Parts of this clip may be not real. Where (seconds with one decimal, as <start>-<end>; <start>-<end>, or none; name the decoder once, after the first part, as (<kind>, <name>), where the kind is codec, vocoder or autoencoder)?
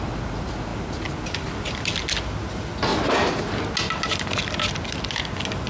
none